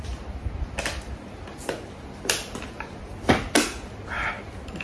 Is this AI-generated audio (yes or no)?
yes